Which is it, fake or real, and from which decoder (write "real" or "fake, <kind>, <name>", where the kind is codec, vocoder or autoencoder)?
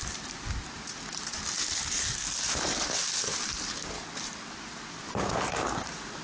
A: fake, vocoder, BigVGAN v2